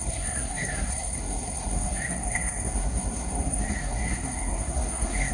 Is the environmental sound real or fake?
fake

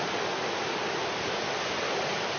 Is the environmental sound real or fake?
real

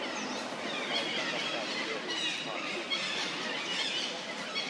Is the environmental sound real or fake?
real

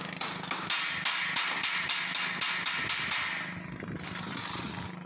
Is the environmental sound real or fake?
real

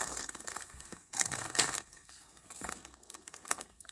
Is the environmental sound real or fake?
fake